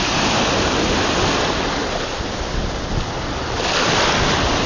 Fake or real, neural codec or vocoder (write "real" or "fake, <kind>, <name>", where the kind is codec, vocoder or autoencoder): real